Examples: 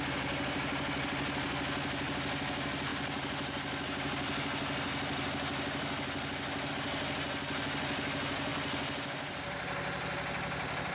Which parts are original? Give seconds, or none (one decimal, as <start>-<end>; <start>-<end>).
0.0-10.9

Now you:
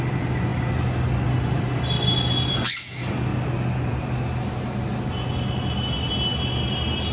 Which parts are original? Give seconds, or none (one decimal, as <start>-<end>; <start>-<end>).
0.0-7.1

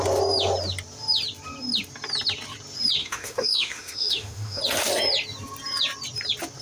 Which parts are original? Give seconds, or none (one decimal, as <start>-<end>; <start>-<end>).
0.0-3.0; 4.6-6.6

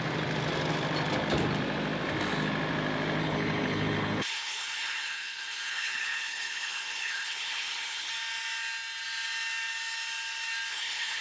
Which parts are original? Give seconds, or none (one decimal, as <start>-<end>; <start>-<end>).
0.0-3.2; 8.1-10.7

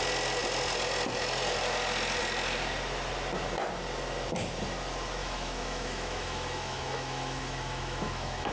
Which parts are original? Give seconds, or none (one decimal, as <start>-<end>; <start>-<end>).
0.0-5.2